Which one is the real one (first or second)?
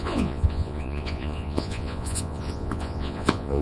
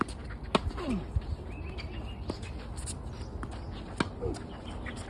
second